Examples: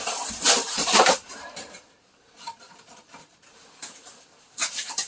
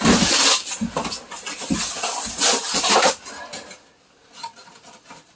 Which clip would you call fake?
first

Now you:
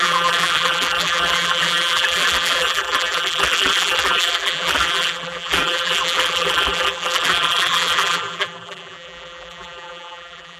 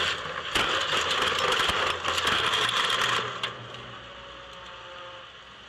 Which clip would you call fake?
first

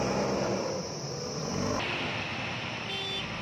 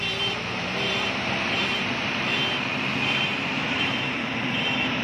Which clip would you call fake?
second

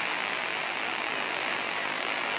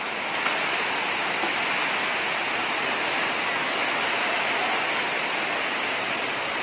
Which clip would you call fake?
first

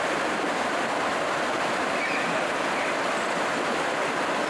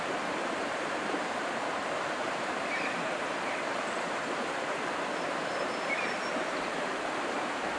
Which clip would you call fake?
second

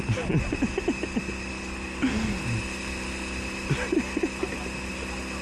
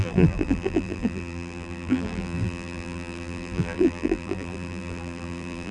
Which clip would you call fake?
second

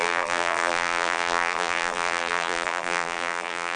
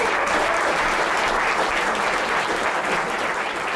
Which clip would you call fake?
first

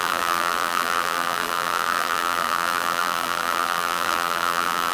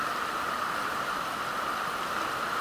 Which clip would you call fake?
first